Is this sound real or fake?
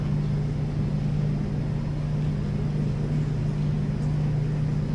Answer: real